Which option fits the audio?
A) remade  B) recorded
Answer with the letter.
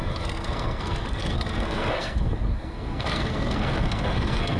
A